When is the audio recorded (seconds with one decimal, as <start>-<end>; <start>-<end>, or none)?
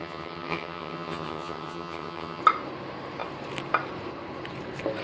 2.4-5.0